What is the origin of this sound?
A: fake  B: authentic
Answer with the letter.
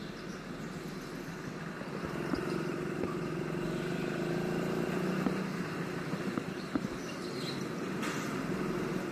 B